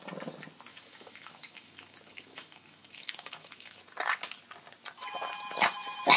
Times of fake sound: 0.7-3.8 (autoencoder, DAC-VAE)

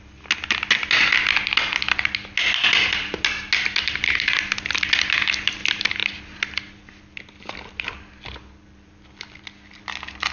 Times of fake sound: none

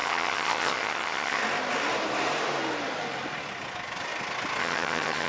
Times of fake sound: 0.0-1.4 (vocoder, HiFi-GAN); 4.6-5.3

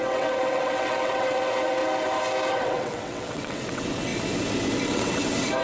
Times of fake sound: 0.0-1.8 (vocoder, WaveNeXt); 2.5-4.1; 4.8-5.6